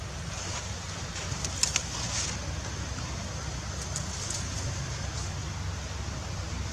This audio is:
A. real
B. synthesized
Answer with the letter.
A